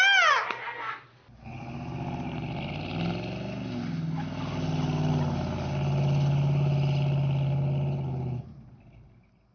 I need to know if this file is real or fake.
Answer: real